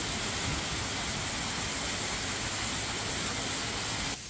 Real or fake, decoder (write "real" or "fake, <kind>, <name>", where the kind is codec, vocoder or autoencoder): real